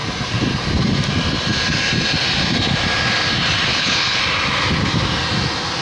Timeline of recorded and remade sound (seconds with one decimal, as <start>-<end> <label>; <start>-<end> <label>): 0.0-3.7 recorded; 3.7-4.2 remade; 4.2-5.8 recorded